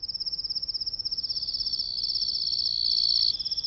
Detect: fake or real real